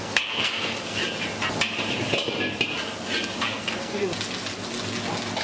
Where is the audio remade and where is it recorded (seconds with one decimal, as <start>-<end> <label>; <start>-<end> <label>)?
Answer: 0.0-1.0 remade; 1.0-3.4 recorded; 3.4-4.0 remade; 4.0-5.4 recorded